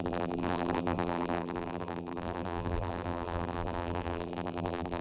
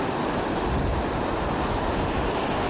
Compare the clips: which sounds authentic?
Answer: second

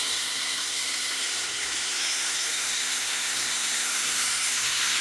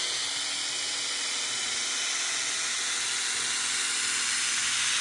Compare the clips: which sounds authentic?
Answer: second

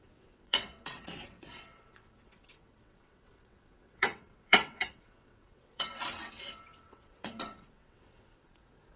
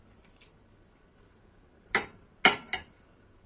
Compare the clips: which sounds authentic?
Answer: second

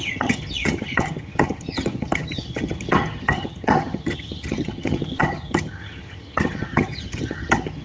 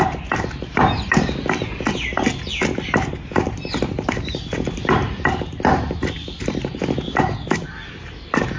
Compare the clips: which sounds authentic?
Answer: second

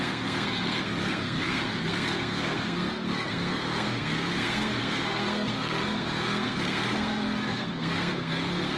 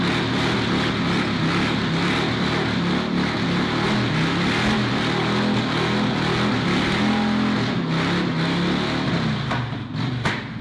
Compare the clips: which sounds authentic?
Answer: second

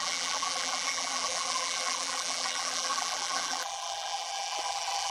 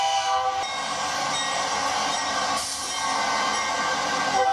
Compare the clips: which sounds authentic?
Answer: second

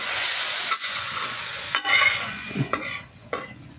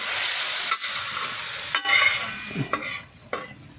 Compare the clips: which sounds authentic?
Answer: second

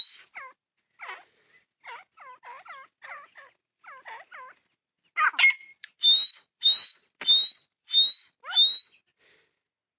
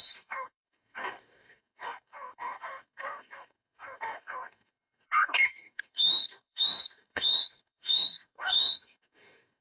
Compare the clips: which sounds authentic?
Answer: first